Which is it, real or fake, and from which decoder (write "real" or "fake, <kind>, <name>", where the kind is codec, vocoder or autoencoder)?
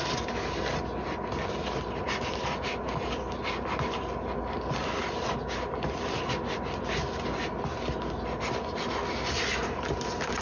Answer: real